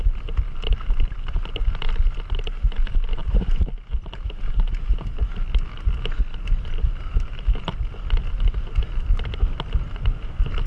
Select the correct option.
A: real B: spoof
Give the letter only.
A